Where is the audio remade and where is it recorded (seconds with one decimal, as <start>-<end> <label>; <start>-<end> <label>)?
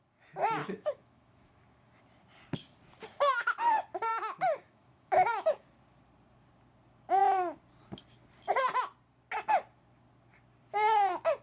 0.0-0.6 recorded; 0.6-2.0 remade; 2.0-4.1 recorded; 4.1-5.8 remade; 5.8-11.4 recorded